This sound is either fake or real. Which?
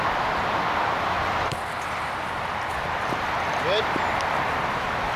real